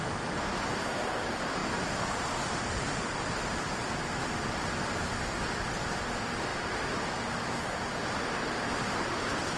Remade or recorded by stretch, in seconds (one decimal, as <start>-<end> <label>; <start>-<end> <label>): 0.0-9.6 recorded